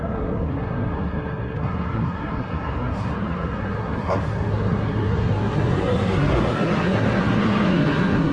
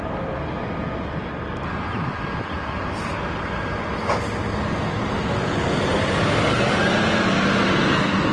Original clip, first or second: second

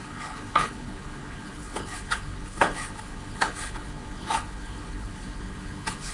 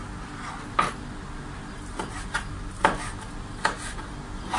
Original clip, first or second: second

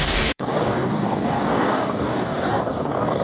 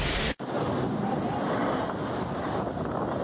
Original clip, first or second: second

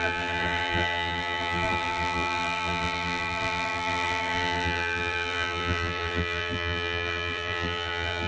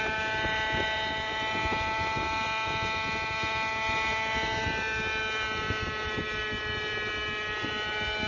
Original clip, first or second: second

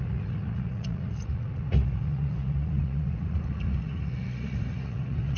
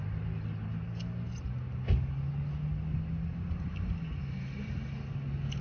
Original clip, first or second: second